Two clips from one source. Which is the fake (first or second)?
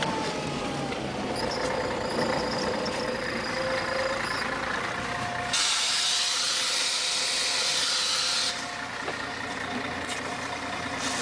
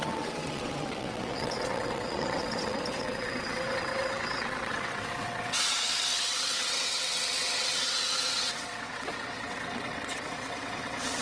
second